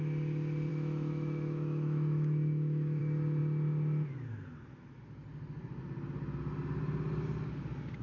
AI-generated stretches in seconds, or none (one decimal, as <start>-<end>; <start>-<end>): 0.7-3.0